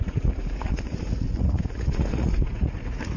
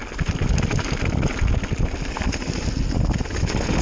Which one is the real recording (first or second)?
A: second